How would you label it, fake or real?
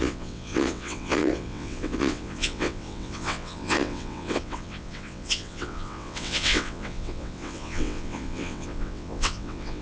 fake